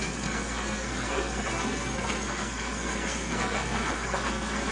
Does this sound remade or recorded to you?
remade